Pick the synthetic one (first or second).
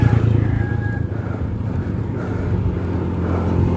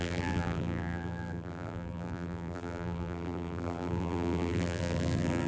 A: second